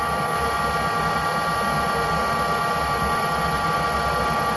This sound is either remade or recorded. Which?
recorded